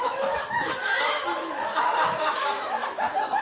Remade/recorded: remade